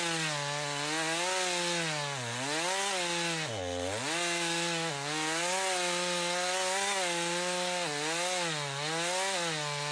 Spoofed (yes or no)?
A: no